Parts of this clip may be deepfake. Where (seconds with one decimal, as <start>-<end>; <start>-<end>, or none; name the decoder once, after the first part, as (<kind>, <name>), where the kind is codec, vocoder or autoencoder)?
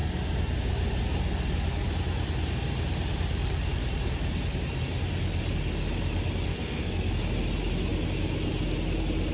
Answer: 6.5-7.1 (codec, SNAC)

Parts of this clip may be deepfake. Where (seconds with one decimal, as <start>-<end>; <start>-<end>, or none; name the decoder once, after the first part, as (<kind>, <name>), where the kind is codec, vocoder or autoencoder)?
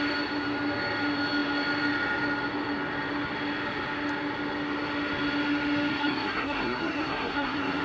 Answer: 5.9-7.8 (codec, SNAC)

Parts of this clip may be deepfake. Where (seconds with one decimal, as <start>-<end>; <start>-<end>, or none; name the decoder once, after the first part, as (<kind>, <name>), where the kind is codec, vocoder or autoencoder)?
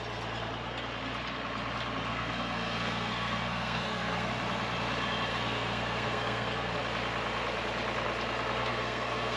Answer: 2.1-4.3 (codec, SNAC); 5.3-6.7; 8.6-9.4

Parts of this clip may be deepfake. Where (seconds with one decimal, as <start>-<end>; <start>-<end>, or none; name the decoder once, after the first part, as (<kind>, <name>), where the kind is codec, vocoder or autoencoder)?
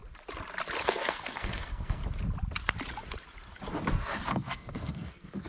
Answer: 0.8-2.0 (codec, SNAC); 3.9-5.5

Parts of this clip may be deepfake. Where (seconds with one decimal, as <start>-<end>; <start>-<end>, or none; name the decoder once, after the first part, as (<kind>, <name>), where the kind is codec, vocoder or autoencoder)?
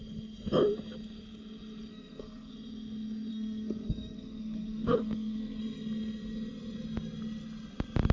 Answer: 1.9-2.5 (codec, SNAC); 3.3-5.6